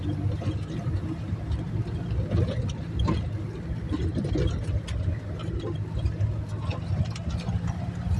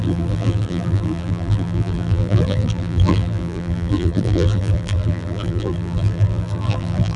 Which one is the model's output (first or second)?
second